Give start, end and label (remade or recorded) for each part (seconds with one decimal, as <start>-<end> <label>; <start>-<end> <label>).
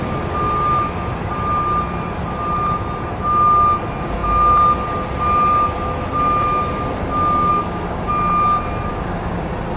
0.0-7.5 recorded; 7.5-8.1 remade; 8.1-8.9 recorded; 8.9-9.4 remade; 9.4-9.8 recorded